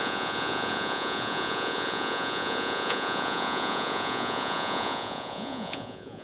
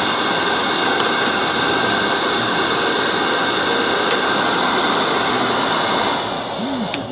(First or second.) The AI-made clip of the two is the first